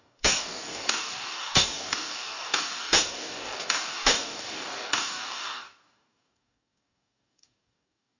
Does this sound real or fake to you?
fake